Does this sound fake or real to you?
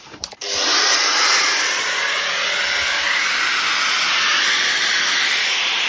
real